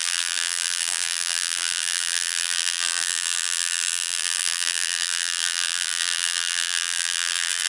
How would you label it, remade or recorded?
remade